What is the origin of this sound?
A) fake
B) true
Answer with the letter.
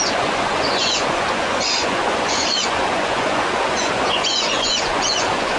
A